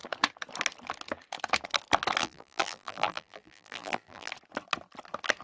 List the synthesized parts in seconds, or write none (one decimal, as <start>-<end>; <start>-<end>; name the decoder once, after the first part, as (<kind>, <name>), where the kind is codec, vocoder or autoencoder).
2.2-4.3 (vocoder, BigVGAN v2)